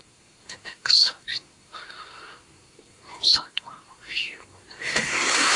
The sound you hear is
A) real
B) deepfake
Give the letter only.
B